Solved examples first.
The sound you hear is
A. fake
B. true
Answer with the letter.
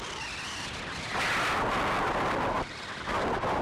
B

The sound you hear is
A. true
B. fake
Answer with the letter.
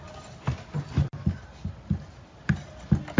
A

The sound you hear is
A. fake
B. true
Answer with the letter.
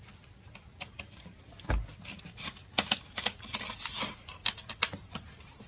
B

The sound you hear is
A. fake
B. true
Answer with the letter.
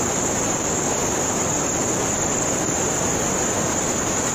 B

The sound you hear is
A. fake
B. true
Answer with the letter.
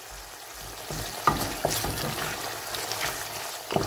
B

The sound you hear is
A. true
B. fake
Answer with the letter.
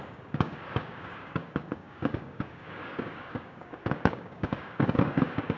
B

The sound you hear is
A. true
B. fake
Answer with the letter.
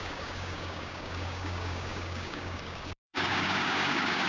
B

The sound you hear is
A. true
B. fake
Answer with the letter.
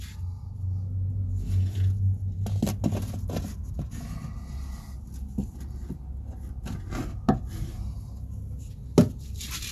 A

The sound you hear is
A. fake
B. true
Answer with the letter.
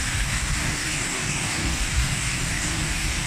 A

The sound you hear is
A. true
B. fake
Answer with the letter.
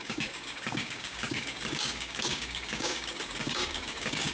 B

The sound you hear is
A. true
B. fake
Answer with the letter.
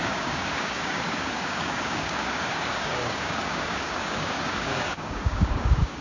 B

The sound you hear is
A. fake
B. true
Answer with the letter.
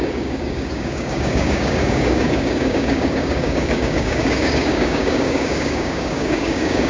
A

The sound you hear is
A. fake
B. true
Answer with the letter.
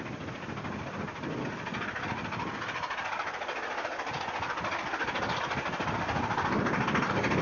B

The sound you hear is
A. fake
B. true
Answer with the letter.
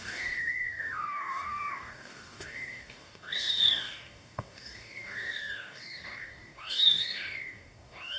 A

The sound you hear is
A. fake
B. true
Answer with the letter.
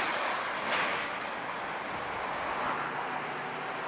B